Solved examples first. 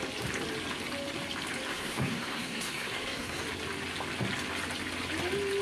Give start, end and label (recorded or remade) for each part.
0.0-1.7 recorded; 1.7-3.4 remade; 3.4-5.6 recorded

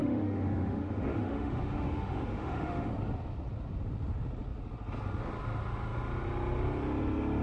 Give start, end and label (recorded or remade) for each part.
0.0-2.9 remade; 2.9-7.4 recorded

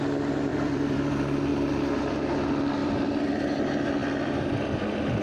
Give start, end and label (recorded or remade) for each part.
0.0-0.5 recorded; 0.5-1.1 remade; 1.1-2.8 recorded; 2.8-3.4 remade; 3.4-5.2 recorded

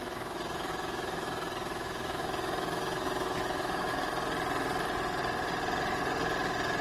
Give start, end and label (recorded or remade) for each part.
0.0-4.1 remade; 4.1-6.8 recorded